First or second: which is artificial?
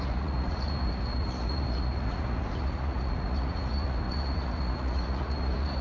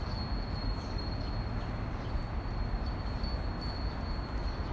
first